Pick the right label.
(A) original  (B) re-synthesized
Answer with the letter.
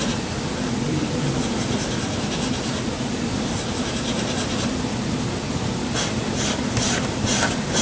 A